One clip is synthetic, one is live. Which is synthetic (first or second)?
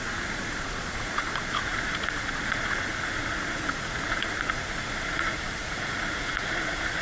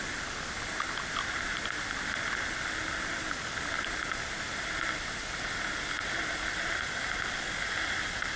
first